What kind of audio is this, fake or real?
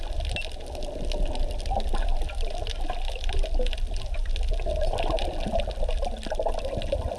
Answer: real